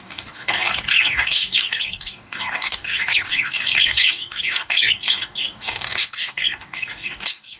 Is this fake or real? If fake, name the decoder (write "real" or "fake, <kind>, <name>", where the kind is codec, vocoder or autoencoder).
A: fake, codec, DAC